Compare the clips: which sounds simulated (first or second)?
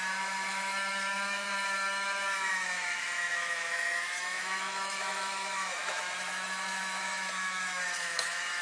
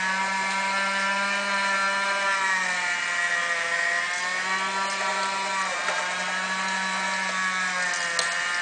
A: first